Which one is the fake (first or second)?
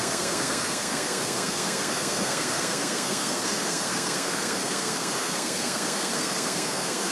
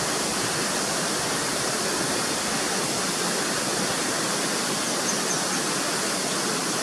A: first